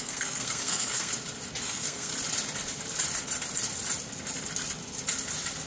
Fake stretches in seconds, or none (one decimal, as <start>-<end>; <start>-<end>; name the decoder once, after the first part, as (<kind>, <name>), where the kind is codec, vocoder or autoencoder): 0.0-1.1 (codec, SNAC); 1.6-2.1

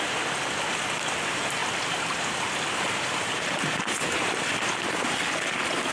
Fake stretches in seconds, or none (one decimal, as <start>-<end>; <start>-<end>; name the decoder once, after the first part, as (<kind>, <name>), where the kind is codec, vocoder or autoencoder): none